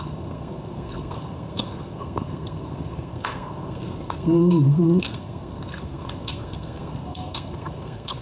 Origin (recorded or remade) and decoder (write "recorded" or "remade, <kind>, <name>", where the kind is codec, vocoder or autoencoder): remade, codec, SNAC